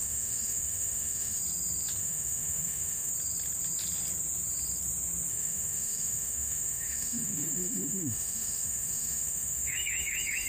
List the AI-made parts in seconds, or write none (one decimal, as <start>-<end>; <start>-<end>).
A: 0.0-1.4; 2.0-3.1; 5.3-10.5

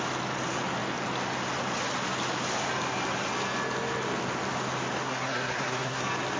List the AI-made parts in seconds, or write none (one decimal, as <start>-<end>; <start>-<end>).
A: 5.0-6.0

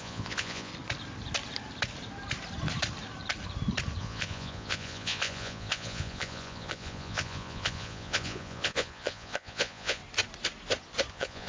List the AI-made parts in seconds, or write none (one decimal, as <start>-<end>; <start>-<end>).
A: 0.0-0.7; 4.0-10.0; 11.1-11.5